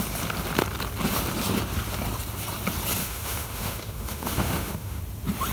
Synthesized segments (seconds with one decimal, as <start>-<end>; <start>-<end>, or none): 3.0-5.0